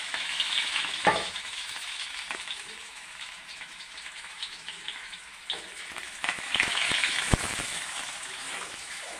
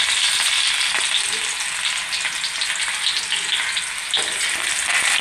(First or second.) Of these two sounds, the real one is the second